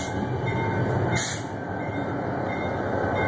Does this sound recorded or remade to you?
recorded